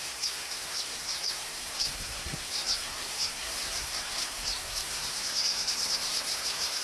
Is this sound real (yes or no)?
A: no